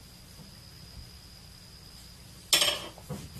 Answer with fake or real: real